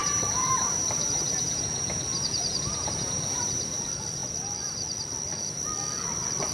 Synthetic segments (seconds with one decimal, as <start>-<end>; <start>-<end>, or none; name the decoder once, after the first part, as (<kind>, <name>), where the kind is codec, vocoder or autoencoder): 0.0-3.8 (vocoder, BigVGAN v2)